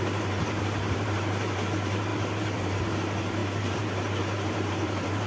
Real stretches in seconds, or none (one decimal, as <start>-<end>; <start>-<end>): none